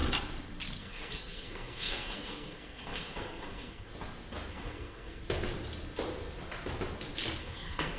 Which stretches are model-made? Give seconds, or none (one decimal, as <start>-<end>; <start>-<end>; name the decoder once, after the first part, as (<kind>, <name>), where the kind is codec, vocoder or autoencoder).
0.8-3.9 (codec, SNAC); 4.5-5.2; 7.4-8.0

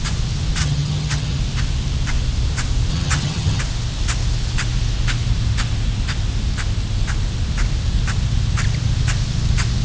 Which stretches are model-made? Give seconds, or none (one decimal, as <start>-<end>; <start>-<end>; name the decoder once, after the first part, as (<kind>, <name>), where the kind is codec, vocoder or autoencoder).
0.6-1.4 (vocoder, HiFi-GAN); 2.9-3.6

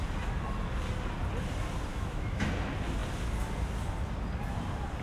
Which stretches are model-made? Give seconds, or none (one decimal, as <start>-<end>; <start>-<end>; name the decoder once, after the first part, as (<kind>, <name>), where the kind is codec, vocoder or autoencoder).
1.9-2.5 (autoencoder, DAC-VAE)

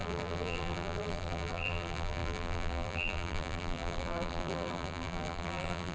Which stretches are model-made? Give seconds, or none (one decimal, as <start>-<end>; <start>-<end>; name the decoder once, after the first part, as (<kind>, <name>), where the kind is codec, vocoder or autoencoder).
0.0-5.9 (vocoder, BigVGAN v2)

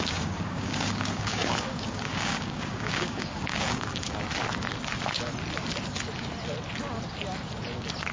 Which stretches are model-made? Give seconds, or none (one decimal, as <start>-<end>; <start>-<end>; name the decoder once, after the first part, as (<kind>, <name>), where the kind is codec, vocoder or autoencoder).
0.0-3.9 (codec, DAC)